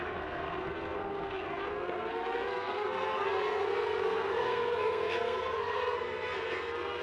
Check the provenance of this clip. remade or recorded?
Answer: remade